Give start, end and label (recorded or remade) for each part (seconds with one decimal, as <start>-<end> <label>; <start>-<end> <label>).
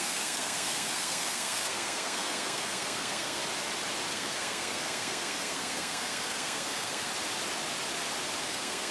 0.0-3.4 remade; 3.4-4.1 recorded; 4.1-7.1 remade; 7.1-8.4 recorded; 8.4-8.9 remade